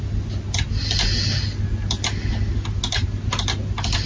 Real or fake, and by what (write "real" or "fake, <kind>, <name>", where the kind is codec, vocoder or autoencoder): real